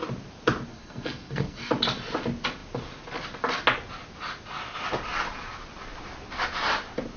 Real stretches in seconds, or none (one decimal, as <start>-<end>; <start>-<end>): 0.0-0.7; 1.7-7.2